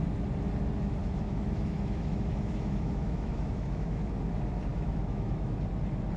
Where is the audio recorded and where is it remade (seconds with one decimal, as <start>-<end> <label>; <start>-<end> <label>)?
0.0-1.0 recorded; 1.0-4.0 remade; 4.0-4.7 recorded; 4.7-5.6 remade; 5.6-6.2 recorded